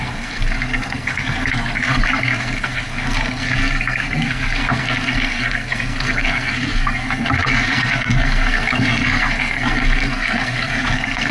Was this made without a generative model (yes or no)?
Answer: no